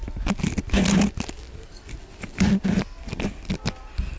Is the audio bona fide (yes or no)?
yes